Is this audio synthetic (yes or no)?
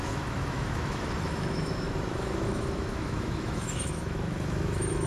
yes